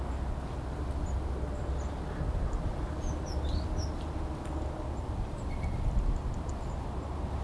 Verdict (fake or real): real